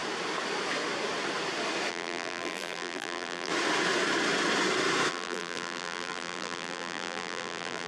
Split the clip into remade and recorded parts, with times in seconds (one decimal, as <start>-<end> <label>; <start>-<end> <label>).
0.0-1.9 recorded; 1.9-3.5 remade; 3.5-5.1 recorded; 5.1-7.9 remade